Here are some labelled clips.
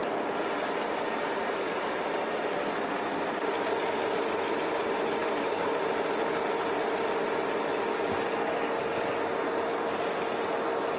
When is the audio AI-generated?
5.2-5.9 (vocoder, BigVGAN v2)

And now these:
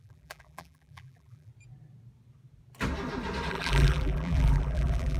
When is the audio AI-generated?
0.0-1.5 (vocoder, BigVGAN v2); 3.5-5.2